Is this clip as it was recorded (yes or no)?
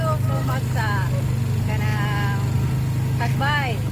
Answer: yes